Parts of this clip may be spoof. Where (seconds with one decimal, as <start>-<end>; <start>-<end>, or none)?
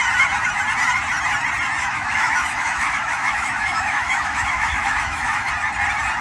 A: 1.8-5.5